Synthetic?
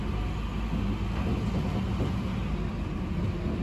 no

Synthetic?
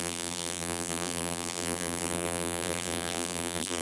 yes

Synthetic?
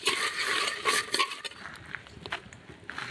no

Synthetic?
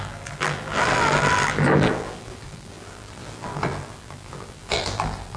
yes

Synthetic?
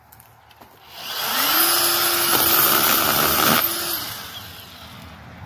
no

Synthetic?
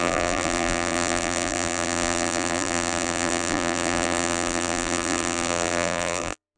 yes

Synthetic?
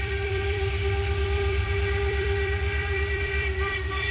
yes